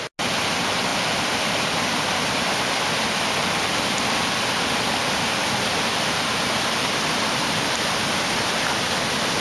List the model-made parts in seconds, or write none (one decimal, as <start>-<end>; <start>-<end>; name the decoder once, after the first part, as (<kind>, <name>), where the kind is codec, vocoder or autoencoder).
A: 0.9-3.4 (vocoder, BigVGAN v2); 5.4-7.4